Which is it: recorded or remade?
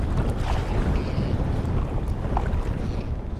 recorded